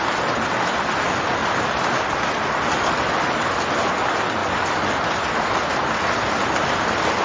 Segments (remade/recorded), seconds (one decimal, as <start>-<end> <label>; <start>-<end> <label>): 0.0-7.2 recorded